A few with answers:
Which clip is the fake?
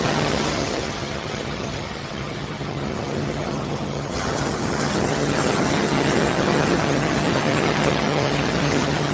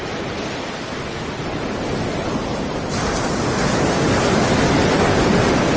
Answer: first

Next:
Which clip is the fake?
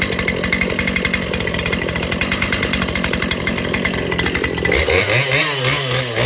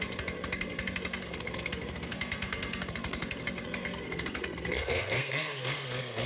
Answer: second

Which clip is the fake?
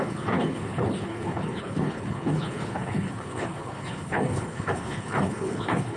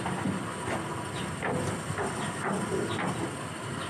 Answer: first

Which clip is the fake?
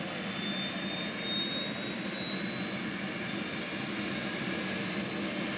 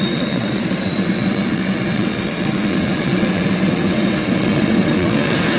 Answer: second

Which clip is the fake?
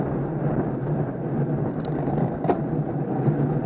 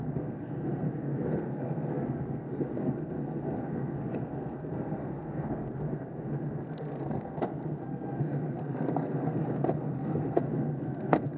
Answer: second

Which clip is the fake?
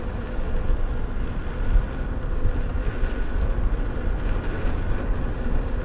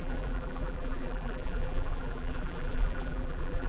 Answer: second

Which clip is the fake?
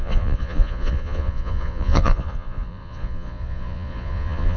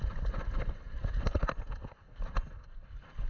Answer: first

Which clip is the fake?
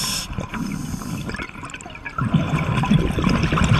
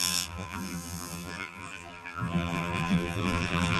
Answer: second